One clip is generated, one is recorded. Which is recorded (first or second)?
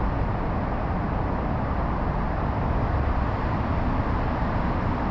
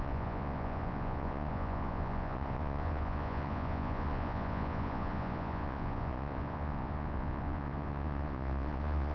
first